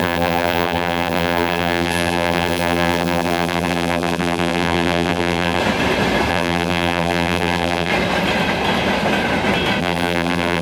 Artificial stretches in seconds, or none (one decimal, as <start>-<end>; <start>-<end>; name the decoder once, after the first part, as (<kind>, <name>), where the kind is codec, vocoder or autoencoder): 0.0-5.6 (vocoder, BigVGAN v2); 6.3-7.9; 9.8-10.6